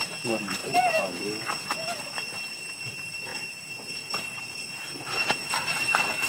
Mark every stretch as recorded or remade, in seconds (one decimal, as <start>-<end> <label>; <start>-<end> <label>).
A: 0.0-0.6 remade; 0.6-2.9 recorded; 2.9-6.3 remade

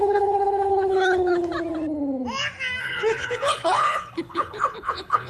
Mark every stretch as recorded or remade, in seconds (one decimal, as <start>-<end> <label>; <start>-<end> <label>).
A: 0.0-1.5 remade; 1.5-2.8 recorded; 2.8-5.3 remade

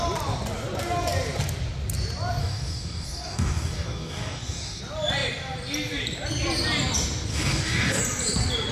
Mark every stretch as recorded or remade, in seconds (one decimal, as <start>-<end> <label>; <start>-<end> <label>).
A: 0.0-2.4 recorded; 2.4-4.8 remade; 4.8-7.3 recorded; 7.3-8.0 remade; 8.0-8.7 recorded